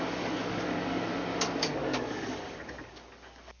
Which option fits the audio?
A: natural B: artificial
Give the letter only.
B